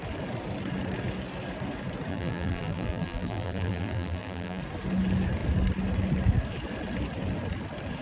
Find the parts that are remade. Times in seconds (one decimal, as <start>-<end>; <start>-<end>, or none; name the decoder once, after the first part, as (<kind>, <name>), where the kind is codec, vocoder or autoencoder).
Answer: 2.1-4.6 (vocoder, BigVGAN v2)